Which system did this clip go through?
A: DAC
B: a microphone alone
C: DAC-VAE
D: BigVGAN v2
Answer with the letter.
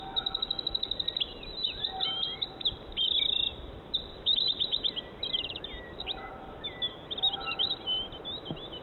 B